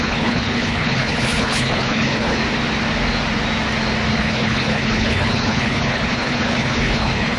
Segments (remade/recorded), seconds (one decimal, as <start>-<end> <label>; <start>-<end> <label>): 0.0-2.4 remade; 2.4-4.1 recorded; 4.1-7.4 remade